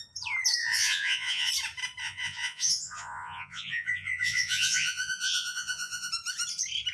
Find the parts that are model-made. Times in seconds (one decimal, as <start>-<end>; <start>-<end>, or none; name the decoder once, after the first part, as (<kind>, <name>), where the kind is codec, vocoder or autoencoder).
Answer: 0.6-1.5 (vocoder, Vocos); 2.0-6.1